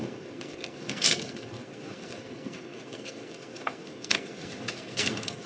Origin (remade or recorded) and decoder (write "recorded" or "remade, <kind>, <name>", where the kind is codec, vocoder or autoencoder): remade, codec, SNAC